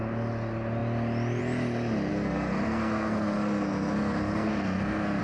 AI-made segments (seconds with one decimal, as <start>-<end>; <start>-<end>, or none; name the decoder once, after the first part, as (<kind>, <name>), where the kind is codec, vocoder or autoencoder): 2.1-5.2 (codec, SNAC)